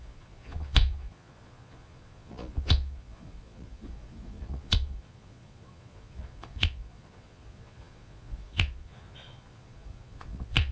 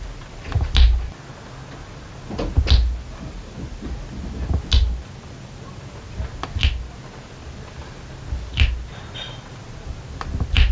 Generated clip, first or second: first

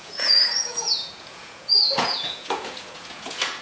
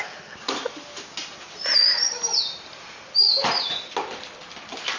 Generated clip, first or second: first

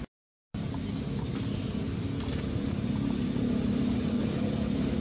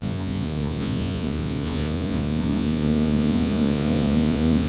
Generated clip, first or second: second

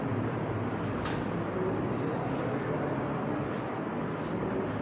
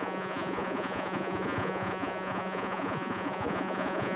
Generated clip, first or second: second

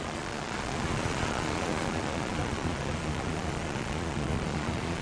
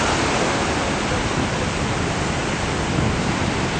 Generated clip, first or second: first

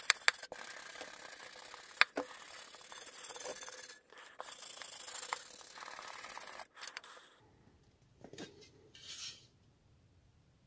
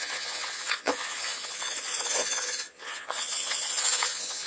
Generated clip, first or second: second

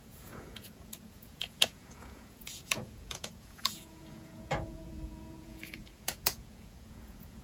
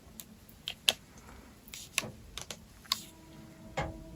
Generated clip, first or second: first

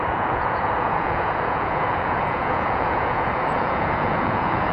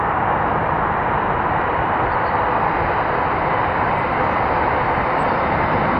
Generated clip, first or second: first